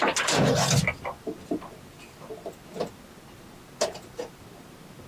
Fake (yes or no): no